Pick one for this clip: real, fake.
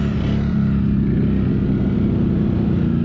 real